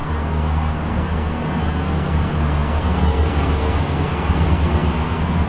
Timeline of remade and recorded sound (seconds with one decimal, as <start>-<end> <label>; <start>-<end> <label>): 0.0-5.5 remade